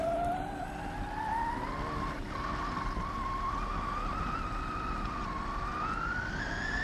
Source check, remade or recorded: recorded